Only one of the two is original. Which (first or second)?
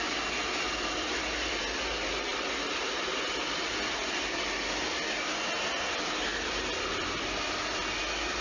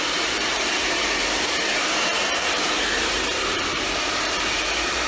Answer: first